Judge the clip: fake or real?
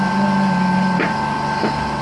real